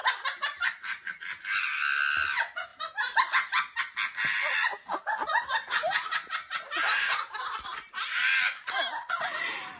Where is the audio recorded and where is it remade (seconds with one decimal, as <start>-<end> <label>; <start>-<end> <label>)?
0.0-9.8 recorded